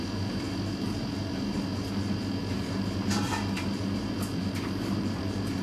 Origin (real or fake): fake